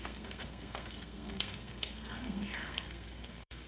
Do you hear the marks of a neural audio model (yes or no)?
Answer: yes